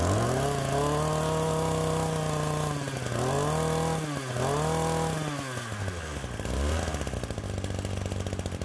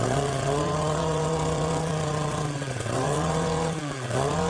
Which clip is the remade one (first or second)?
second